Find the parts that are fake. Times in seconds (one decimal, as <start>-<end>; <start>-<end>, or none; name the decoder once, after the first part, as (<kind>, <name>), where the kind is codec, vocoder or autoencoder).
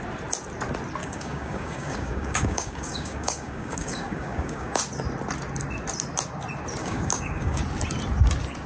1.0-4.8 (codec, DAC); 6.8-7.6